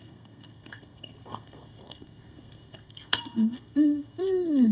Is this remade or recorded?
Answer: remade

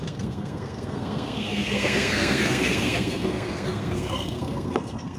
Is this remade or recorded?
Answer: remade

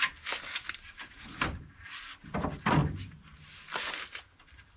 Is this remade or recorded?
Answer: recorded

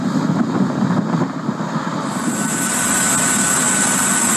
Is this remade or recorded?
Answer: recorded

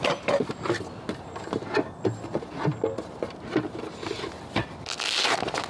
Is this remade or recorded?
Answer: recorded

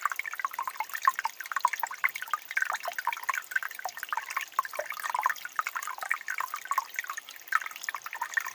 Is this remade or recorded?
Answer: recorded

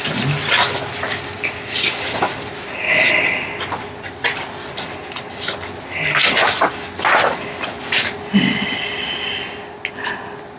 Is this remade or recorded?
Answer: recorded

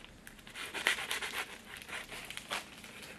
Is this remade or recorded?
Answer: recorded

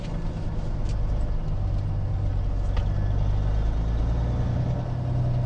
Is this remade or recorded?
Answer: recorded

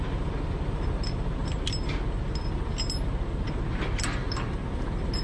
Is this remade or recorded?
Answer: recorded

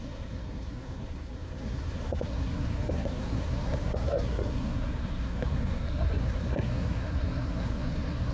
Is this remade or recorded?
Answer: remade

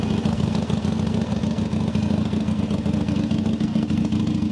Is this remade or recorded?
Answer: remade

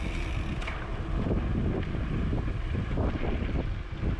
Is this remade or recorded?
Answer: recorded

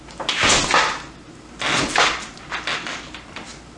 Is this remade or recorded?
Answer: recorded